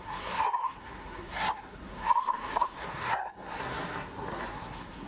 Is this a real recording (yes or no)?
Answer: no